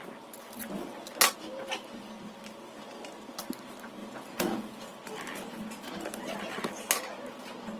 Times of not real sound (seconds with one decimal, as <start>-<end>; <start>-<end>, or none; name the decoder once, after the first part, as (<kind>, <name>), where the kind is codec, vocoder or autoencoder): 4.0-4.9 (vocoder, Vocos)